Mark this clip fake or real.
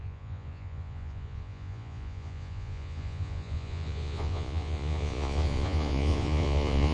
fake